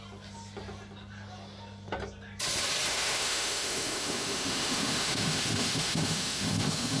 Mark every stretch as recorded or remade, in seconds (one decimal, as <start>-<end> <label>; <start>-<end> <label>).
0.0-2.9 recorded; 2.9-7.0 remade